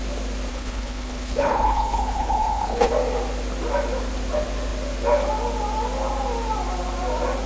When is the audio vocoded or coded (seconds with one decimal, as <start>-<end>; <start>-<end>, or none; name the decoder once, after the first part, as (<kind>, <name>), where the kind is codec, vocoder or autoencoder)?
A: 0.5-2.9 (codec, HILCodec)